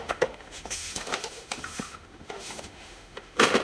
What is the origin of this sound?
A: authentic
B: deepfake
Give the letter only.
B